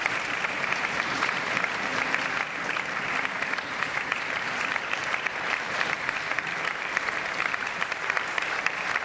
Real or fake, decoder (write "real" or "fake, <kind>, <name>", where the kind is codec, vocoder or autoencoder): fake, vocoder, BigVGAN v2